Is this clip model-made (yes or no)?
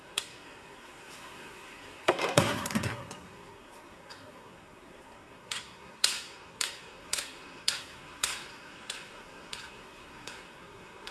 yes